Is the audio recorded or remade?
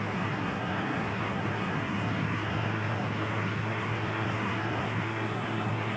remade